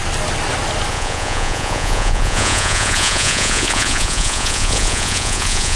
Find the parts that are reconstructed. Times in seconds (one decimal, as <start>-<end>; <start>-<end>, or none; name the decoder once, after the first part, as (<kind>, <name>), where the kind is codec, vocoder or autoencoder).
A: 0.9-5.8 (vocoder, Vocos)